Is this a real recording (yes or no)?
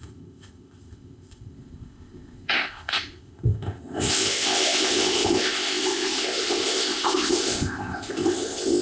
no